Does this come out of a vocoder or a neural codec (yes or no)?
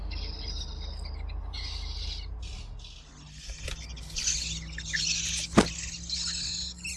no